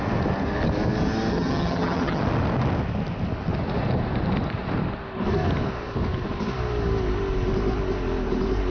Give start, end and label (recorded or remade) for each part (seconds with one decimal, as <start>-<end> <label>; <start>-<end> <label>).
0.0-1.3 recorded; 1.3-2.2 remade; 2.2-8.7 recorded